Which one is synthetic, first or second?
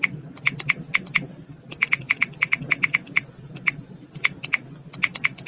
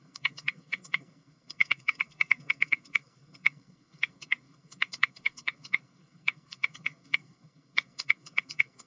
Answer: second